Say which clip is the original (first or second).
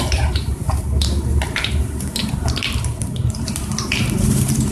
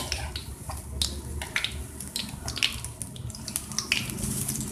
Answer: second